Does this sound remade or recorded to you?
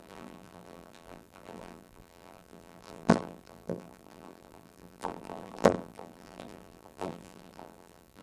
remade